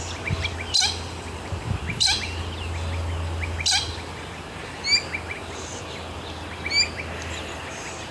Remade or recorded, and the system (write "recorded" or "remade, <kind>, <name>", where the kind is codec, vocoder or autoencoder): recorded